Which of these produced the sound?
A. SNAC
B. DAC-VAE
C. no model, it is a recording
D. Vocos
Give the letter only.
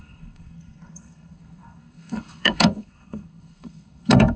A